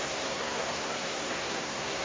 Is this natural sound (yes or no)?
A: no